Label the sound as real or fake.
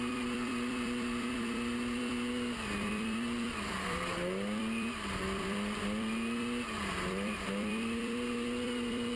fake